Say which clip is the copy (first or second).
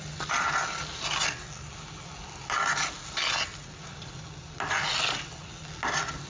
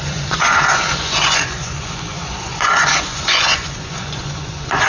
second